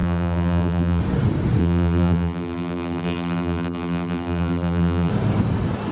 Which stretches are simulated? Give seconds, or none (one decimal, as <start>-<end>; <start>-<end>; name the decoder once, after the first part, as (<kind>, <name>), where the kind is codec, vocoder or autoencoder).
0.0-1.0 (vocoder, BigVGAN v2); 1.6-5.1